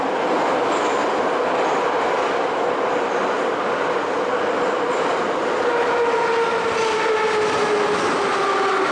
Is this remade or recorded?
recorded